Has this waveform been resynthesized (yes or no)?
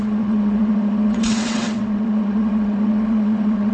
yes